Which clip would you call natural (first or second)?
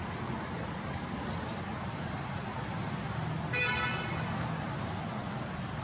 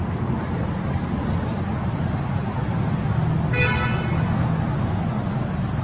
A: second